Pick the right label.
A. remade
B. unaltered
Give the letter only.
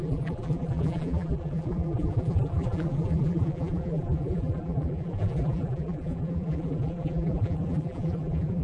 A